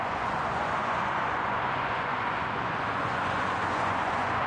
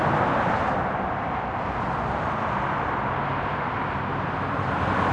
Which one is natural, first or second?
second